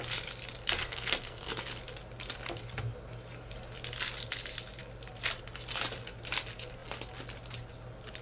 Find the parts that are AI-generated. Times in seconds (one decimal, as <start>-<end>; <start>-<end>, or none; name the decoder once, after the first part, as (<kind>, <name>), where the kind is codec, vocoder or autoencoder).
0.8-1.5 (codec, SNAC)